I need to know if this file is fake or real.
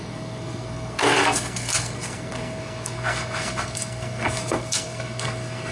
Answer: fake